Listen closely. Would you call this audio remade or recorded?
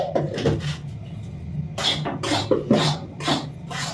recorded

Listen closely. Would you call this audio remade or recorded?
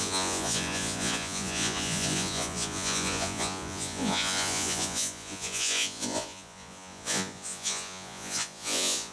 remade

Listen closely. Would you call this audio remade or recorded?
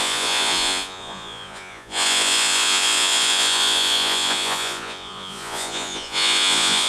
remade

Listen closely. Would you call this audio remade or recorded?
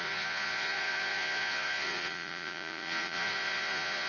remade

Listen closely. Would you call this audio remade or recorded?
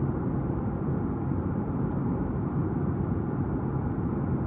recorded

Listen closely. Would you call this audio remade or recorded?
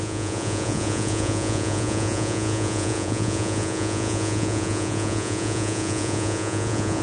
remade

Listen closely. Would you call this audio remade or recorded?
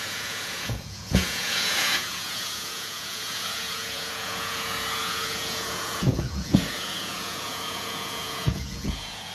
remade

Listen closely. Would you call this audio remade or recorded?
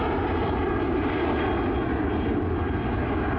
recorded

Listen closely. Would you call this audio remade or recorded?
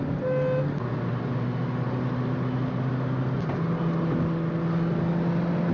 recorded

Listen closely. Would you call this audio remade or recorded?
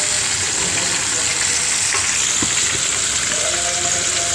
recorded